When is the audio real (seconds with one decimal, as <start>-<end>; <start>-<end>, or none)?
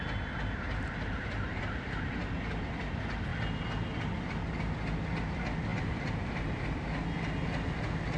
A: 0.0-1.5; 2.1-5.7; 6.6-8.2